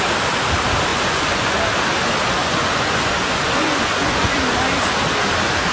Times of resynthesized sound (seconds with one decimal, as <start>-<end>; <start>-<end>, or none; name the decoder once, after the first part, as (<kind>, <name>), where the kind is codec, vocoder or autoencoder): 0.9-1.6 (vocoder, Vocos); 2.4-4.4